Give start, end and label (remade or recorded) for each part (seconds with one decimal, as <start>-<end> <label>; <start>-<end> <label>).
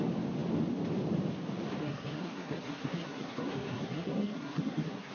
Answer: 0.0-1.8 recorded; 1.8-5.1 remade